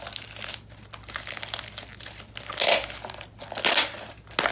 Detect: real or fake real